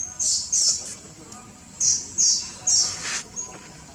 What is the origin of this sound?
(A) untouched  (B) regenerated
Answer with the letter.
A